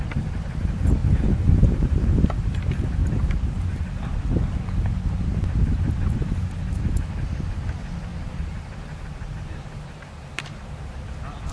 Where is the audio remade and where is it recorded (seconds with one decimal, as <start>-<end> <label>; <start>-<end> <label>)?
0.0-1.0 recorded; 1.0-2.5 remade; 2.5-3.0 recorded; 3.0-4.1 remade; 4.1-8.1 recorded; 8.1-11.0 remade; 11.0-11.5 recorded